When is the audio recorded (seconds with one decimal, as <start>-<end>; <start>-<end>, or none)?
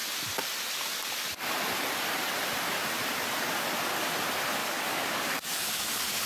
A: 0.0-4.6